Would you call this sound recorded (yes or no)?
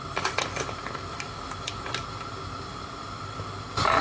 yes